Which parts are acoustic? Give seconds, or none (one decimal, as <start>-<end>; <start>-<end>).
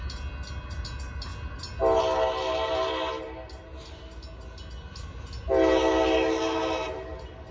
0.0-7.5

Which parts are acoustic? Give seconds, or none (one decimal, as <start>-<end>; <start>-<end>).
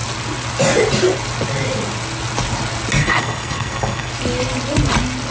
0.0-3.0; 4.1-5.3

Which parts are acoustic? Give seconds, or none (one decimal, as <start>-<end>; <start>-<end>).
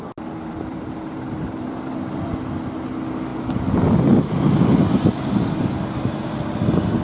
0.0-0.7; 2.3-3.3; 4.3-7.0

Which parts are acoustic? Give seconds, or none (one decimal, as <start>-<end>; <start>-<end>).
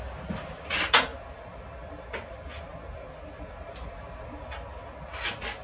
0.0-5.6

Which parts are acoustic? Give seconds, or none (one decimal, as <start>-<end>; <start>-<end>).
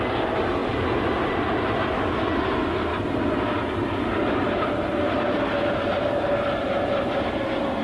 0.0-7.8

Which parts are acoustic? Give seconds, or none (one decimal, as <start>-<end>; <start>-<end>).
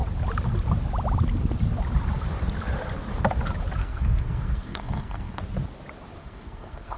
0.0-3.8; 5.4-6.2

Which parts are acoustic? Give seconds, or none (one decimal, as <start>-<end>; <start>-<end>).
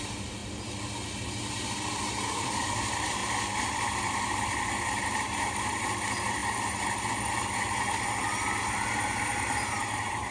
0.4-1.5; 3.2-5.0; 6.4-7.7; 8.2-8.9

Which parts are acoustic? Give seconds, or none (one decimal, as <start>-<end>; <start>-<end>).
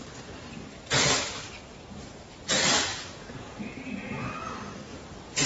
0.0-2.9; 4.4-5.5